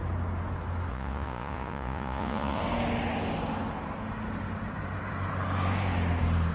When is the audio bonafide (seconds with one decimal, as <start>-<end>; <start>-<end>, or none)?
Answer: 0.0-0.9; 2.6-6.5